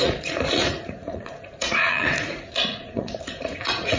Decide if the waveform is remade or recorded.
remade